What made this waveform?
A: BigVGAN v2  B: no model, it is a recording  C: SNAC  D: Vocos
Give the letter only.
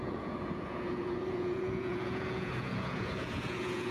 D